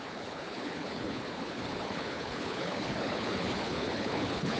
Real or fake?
fake